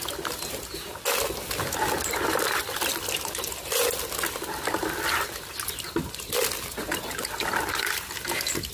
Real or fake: real